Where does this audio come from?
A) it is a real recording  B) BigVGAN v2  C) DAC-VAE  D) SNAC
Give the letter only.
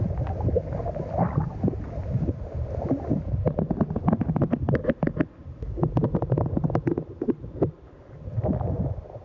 A